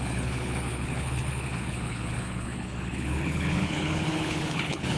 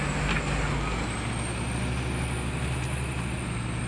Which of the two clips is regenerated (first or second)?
first